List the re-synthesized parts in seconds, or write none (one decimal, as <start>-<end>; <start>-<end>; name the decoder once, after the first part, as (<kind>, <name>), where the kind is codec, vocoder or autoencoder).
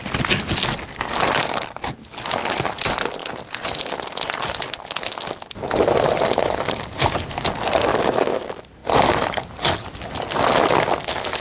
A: 7.9-8.4 (codec, DAC)